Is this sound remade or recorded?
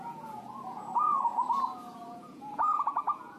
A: remade